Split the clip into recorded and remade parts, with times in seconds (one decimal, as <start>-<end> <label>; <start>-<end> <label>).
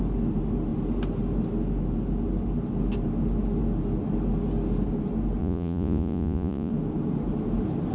0.0-5.4 recorded; 5.4-6.7 remade; 6.7-7.9 recorded